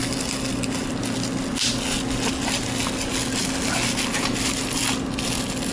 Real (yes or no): yes